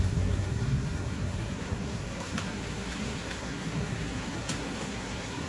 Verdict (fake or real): fake